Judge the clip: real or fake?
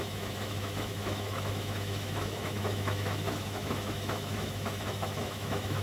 fake